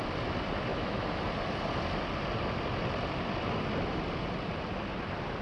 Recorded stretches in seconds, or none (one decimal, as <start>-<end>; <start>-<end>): 0.0-0.7; 1.2-5.4